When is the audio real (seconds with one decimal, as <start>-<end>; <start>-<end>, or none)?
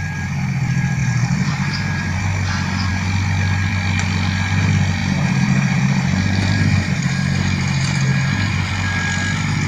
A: 0.0-1.0; 2.2-5.0; 8.7-9.7